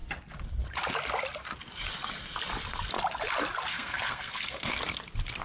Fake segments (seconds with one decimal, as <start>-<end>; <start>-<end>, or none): 3.7-4.8